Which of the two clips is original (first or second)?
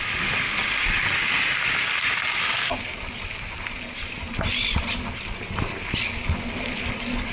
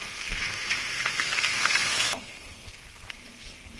first